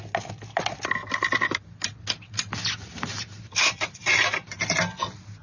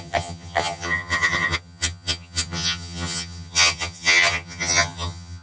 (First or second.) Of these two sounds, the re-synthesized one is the second